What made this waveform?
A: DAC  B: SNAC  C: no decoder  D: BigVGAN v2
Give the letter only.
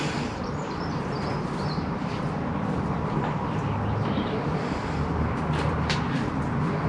D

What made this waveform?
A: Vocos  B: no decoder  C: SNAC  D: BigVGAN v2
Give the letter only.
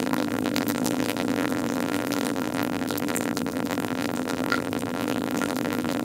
D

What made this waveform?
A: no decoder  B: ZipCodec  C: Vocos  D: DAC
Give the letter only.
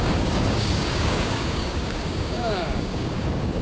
D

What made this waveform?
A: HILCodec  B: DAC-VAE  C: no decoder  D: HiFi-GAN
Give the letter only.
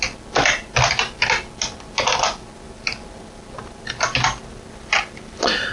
C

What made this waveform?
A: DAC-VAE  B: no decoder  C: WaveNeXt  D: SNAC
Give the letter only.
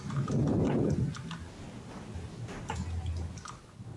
B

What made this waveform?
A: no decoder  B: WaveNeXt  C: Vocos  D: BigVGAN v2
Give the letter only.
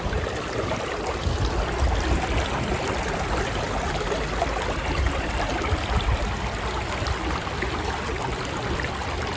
D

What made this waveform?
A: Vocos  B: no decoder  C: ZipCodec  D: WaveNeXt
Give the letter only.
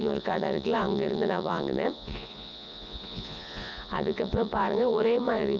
A